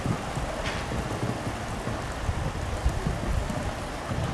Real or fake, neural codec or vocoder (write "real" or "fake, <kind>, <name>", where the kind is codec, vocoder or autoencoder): real